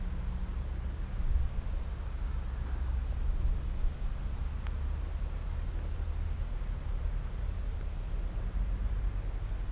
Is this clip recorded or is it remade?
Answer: recorded